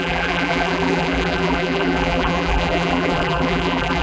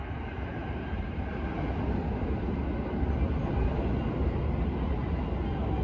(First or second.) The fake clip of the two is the first